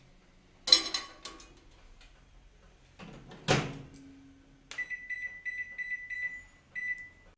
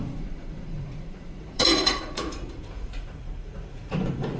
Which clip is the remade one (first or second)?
second